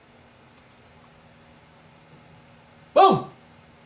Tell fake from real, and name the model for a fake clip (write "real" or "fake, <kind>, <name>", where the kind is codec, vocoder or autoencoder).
real